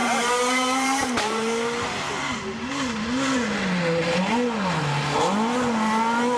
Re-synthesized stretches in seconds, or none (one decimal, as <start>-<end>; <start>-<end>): 0.0-2.7